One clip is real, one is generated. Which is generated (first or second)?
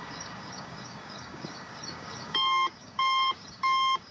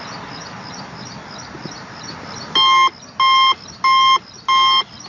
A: first